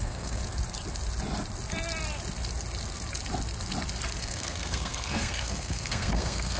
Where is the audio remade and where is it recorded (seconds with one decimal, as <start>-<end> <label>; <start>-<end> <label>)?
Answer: 0.0-0.4 remade; 0.4-4.2 recorded; 4.2-6.6 remade